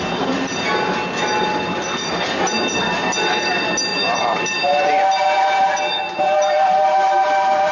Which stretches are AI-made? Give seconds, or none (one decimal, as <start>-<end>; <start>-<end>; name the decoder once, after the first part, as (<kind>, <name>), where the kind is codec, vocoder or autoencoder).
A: 3.9-7.7 (vocoder, BigVGAN v2)